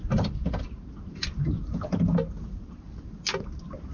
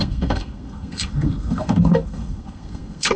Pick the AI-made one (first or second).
second